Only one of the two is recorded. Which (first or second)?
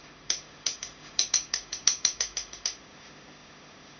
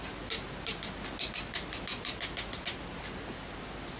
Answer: second